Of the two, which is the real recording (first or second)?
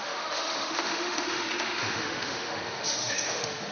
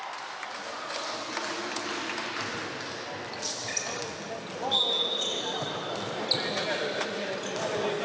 second